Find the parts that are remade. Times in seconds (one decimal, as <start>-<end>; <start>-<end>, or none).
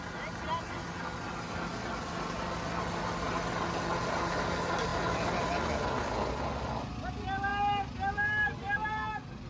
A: none